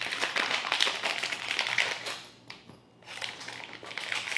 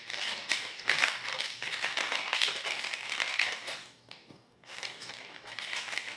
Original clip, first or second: first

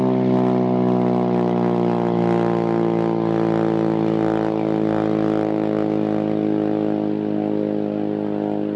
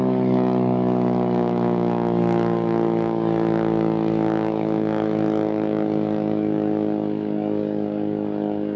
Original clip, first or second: first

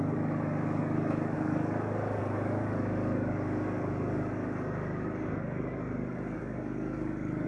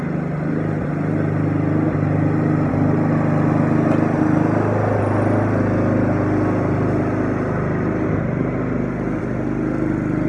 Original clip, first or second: second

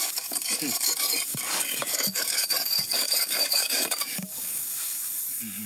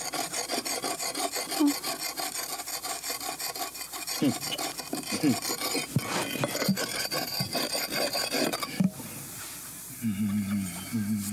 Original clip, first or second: second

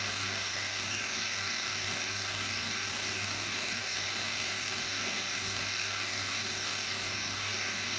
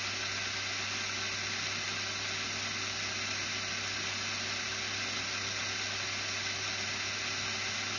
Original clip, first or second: second